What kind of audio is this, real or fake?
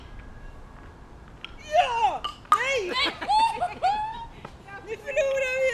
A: real